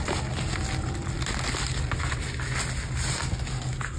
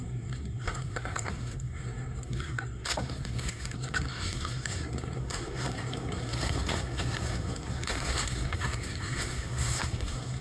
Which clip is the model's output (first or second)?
second